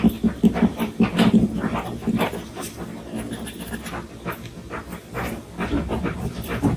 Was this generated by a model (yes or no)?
no